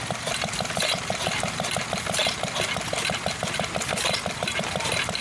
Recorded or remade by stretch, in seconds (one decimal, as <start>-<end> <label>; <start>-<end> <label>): 0.0-5.2 recorded